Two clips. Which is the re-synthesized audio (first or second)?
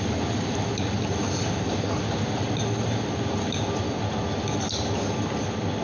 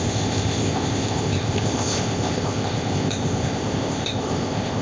second